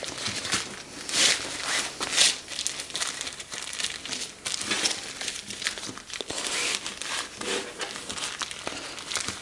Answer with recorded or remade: recorded